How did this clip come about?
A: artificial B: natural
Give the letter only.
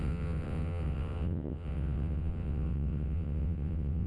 A